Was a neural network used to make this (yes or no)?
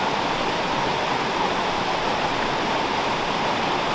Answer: no